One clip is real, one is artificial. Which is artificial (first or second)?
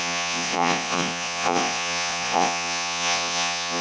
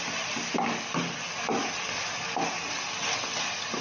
first